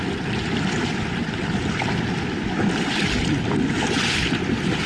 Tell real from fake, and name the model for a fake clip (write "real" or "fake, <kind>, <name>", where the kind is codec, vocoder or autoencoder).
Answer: real